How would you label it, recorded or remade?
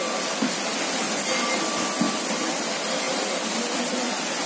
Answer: recorded